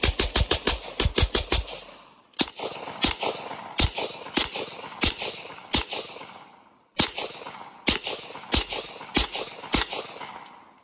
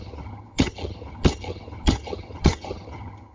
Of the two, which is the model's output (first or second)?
second